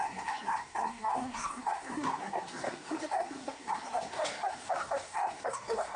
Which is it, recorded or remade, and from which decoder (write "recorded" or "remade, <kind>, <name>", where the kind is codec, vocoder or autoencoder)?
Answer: remade, codec, SNAC